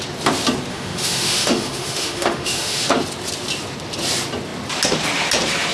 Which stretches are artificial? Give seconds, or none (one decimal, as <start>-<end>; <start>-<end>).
0.7-2.9

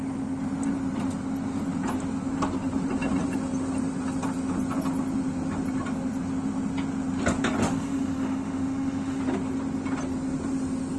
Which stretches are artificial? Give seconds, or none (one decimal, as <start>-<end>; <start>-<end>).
7.6-9.2

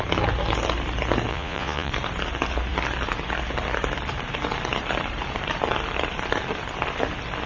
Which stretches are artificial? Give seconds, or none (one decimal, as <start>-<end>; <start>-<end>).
1.3-1.9

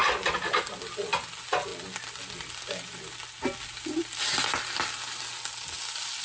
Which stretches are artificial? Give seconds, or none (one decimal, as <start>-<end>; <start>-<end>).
none